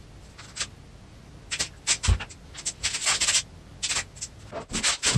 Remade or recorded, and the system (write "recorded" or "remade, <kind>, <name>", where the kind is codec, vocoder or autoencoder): recorded